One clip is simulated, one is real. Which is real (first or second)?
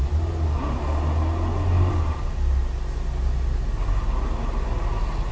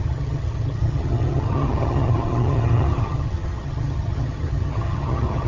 first